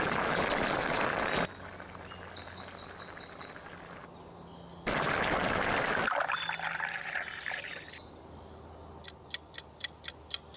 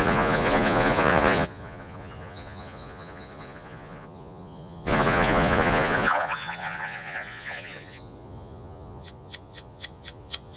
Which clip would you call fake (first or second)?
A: second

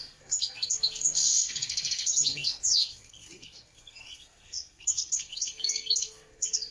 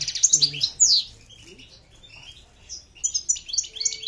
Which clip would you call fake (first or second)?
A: first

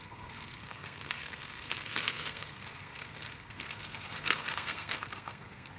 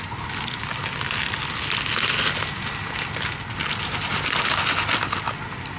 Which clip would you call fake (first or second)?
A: first